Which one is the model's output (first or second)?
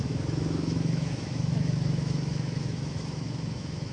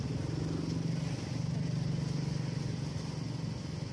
first